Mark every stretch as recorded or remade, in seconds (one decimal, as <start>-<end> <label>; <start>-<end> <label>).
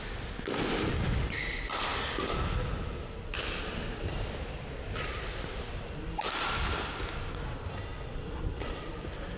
0.0-9.4 recorded